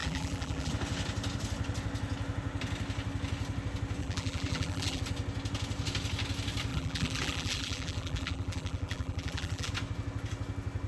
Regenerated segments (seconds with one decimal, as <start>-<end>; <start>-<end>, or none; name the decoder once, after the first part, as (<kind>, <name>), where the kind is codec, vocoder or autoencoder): 0.0-0.7 (vocoder, BigVGAN v2); 4.0-5.0; 6.7-9.7

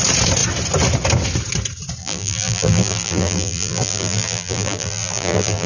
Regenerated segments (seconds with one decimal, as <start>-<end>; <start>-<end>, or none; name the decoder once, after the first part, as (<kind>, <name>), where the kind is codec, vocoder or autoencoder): 2.0-5.7 (vocoder, BigVGAN v2)

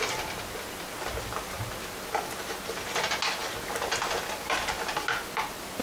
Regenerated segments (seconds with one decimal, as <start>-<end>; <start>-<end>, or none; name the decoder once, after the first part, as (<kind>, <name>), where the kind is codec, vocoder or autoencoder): none

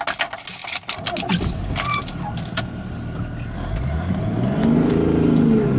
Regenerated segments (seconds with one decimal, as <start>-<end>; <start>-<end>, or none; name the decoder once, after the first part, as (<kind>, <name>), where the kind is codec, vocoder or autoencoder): none